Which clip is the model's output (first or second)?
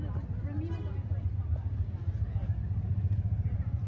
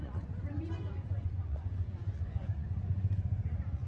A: second